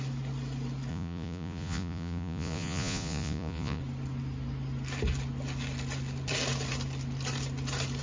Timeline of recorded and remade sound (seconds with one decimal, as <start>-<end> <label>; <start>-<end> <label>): 0.0-0.9 recorded; 0.9-3.8 remade; 3.8-8.0 recorded